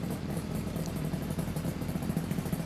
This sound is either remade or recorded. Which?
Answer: remade